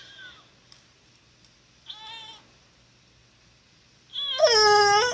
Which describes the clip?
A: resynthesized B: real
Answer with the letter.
B